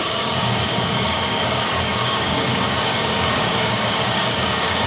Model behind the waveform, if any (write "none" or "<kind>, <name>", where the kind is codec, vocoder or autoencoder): codec, DAC